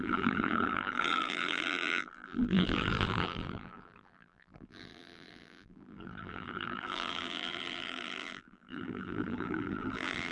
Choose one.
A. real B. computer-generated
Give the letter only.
B